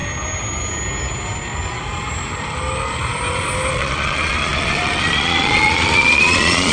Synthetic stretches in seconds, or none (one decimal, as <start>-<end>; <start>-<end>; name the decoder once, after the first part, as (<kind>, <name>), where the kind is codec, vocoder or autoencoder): 3.7-6.7 (vocoder, Vocos)